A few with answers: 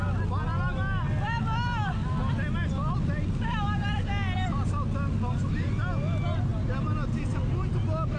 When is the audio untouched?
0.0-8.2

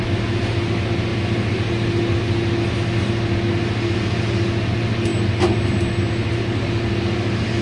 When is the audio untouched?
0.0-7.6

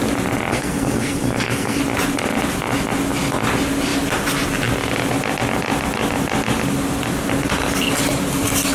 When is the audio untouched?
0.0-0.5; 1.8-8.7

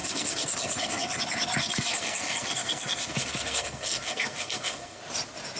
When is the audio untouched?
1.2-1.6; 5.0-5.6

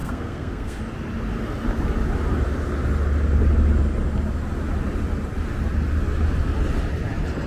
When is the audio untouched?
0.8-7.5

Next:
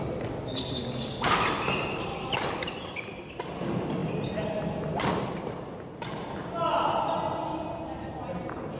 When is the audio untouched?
0.0-8.8

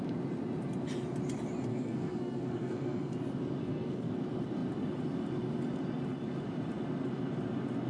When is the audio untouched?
0.0-1.7; 3.1-3.6; 4.1-7.9

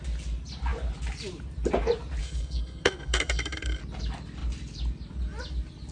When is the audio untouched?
0.0-2.2; 3.8-5.9